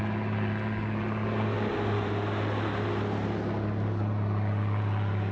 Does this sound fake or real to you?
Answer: real